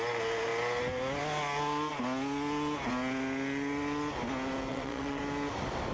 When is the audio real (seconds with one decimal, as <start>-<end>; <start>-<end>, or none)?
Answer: 0.0-4.7; 5.2-5.9